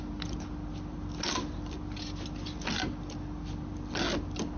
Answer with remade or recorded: recorded